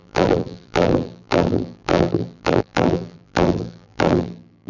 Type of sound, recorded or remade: remade